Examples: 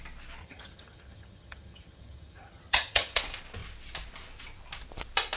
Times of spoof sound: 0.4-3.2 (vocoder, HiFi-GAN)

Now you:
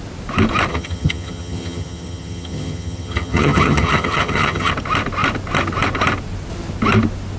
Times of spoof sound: 0.7-4.7 (vocoder, HiFi-GAN)